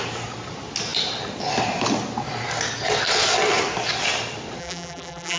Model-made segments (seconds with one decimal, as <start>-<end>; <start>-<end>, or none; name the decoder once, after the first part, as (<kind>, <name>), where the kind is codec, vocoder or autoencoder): 4.6-5.4 (vocoder, BigVGAN v2)